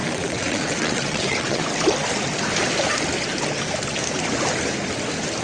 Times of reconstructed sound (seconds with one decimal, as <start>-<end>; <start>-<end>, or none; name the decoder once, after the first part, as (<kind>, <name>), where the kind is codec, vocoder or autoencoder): 0.0-1.6 (vocoder, WaveNeXt)